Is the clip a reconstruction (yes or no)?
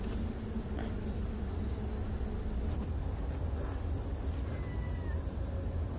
no